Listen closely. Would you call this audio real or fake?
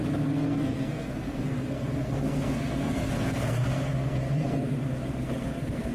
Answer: fake